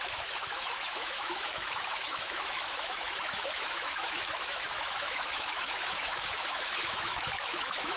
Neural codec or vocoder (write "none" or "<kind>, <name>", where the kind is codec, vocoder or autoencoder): autoencoder, DAC-VAE